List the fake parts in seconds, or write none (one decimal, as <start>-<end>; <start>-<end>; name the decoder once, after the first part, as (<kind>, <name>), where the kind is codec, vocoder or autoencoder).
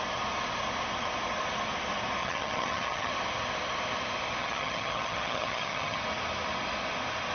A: 2.2-3.1 (vocoder, HiFi-GAN); 4.4-6.0